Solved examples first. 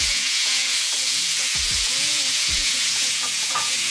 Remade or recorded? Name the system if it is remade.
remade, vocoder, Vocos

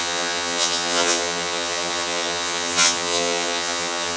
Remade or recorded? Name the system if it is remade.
remade, vocoder, HiFi-GAN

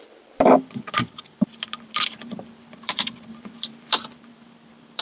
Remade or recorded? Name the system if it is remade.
remade, vocoder, BigVGAN v2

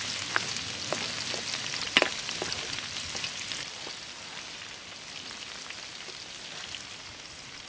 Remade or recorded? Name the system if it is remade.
recorded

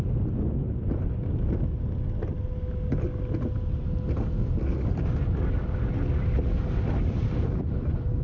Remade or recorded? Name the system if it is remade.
recorded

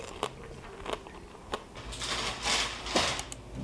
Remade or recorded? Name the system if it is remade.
recorded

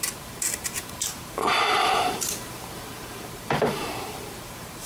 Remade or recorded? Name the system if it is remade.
remade, vocoder, BigVGAN v2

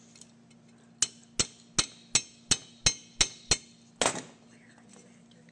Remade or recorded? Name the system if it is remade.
recorded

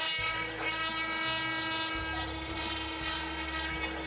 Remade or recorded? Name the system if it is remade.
recorded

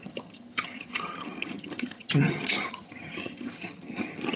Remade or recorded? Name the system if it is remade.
remade, vocoder, HiFi-GAN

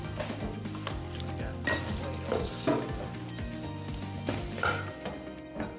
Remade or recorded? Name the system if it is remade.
remade, vocoder, BigVGAN v2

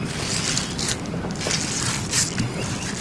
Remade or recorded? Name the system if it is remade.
recorded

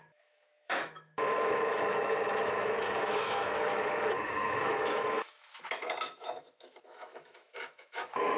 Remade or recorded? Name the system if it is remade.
remade, autoencoder, DAC-VAE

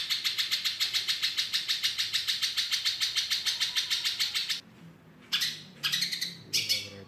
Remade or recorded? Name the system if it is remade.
recorded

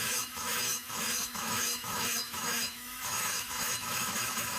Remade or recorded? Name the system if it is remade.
remade, autoencoder, DAC-VAE